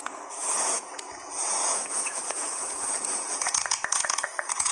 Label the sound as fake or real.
fake